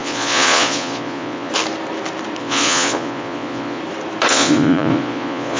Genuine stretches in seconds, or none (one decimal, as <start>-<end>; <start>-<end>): 1.5-2.4; 3.8-4.3